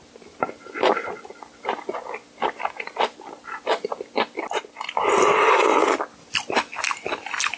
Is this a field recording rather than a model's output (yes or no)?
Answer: yes